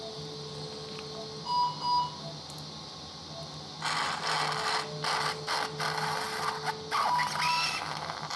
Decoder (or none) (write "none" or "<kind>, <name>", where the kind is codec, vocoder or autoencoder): none